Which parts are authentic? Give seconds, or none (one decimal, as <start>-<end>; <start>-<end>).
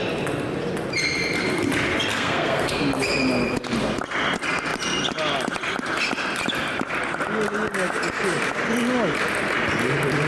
0.0-2.1; 2.8-10.3